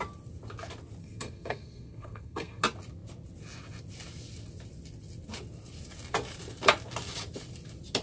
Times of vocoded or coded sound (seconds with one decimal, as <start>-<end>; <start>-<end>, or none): 1.0-2.6